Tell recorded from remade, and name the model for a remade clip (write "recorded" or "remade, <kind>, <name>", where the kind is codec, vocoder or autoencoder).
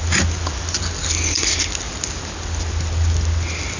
recorded